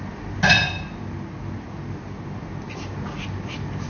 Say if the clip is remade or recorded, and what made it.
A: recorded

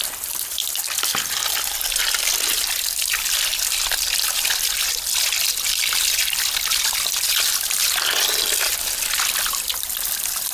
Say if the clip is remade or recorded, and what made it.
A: recorded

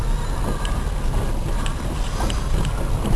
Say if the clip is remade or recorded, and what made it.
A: recorded